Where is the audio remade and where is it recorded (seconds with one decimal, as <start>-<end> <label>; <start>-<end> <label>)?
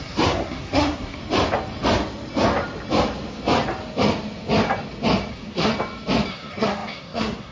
0.0-1.2 remade; 1.2-5.3 recorded; 5.3-5.7 remade; 5.7-6.3 recorded; 6.3-7.5 remade